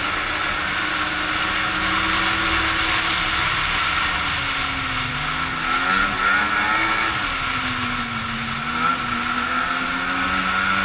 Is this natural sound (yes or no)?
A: yes